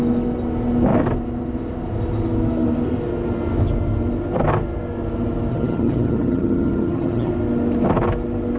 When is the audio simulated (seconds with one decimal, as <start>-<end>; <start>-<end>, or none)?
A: 5.5-7.3